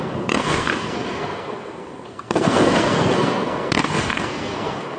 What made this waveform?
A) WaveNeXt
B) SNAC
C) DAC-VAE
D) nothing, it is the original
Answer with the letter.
B